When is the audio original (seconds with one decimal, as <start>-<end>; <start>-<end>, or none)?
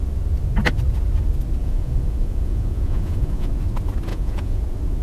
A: 0.0-1.6; 3.5-4.1; 4.6-5.0